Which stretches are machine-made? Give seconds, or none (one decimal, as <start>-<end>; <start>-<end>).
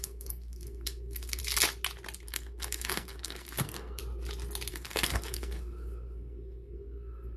0.0-1.4; 2.3-4.0; 4.7-7.4